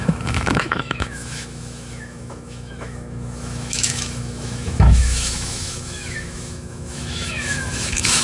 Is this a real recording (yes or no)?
no